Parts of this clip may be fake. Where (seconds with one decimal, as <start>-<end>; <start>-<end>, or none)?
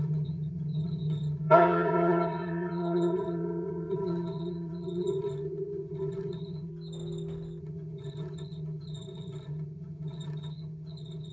0.0-6.7; 7.6-11.3